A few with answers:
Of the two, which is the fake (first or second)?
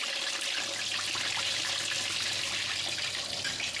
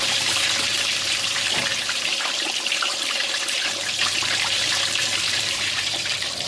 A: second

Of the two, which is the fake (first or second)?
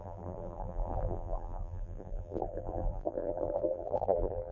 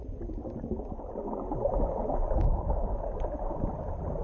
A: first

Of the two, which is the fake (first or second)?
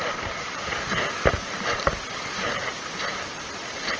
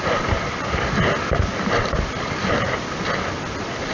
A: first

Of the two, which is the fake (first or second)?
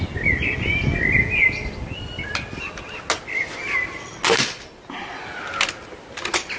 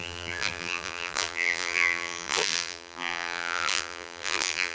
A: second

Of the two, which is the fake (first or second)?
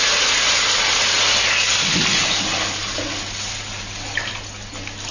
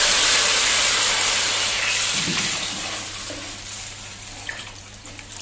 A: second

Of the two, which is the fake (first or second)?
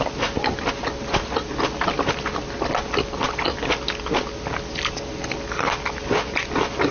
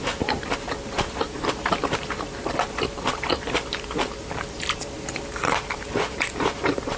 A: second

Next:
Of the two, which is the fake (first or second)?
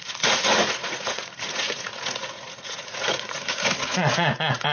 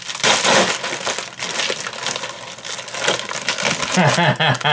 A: first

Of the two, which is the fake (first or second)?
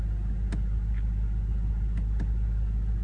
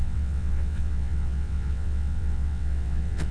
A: second